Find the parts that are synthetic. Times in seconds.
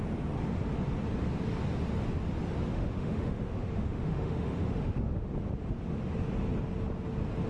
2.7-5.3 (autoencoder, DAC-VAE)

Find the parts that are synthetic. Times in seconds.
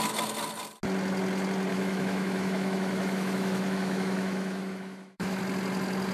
1.7-5.4 (autoencoder, DAC-VAE)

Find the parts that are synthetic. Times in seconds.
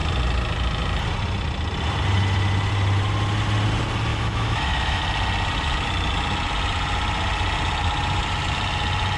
4.1-5.0 (autoencoder, DAC-VAE)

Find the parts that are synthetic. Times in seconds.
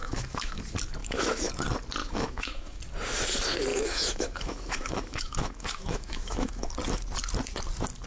0.0-0.6 (autoencoder, DAC-VAE); 1.0-1.5; 2.0-2.8; 3.7-6.7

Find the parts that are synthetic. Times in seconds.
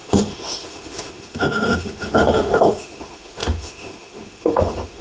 0.0-5.0 (autoencoder, DAC-VAE)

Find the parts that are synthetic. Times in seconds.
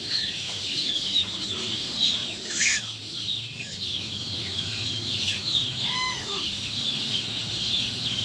0.0-8.2 (autoencoder, DAC-VAE)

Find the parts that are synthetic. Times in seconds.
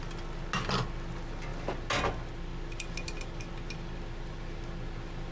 none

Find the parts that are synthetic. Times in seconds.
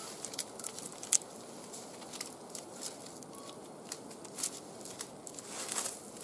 none